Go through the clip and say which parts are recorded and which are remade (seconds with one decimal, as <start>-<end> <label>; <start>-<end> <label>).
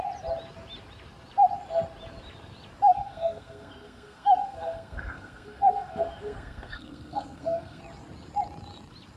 0.0-2.9 recorded; 2.9-7.8 remade; 7.8-9.2 recorded